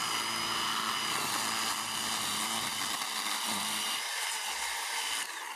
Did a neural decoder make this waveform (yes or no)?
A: no